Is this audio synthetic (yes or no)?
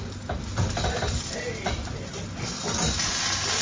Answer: no